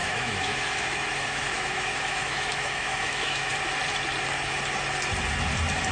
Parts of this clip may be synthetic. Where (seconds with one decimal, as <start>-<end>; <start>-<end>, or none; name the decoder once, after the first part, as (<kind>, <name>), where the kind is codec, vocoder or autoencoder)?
0.0-3.5 (autoencoder, DAC-VAE)